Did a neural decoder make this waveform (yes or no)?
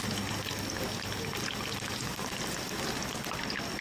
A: no